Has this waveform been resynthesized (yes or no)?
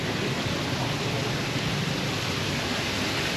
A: no